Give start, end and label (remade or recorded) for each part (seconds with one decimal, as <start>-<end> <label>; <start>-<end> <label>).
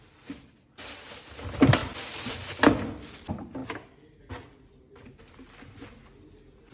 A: 0.0-6.7 recorded